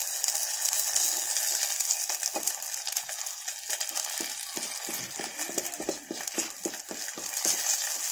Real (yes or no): yes